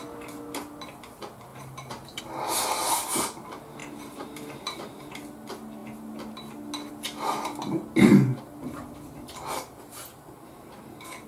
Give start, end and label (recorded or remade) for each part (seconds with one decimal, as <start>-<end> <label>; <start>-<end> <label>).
0.0-1.5 recorded; 1.5-2.2 remade; 2.2-3.8 recorded; 3.8-5.1 remade; 5.1-11.3 recorded